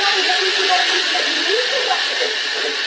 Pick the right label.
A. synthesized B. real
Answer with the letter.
A